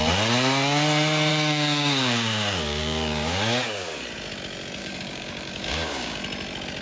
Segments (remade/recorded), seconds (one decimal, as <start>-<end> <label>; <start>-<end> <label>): 0.0-1.3 recorded; 1.3-4.0 remade; 4.0-4.8 recorded; 4.8-6.2 remade; 6.2-6.8 recorded